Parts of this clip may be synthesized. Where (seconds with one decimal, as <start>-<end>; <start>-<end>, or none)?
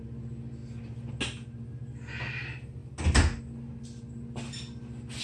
none